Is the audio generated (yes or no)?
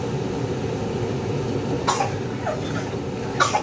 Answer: no